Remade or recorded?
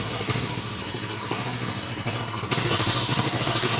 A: remade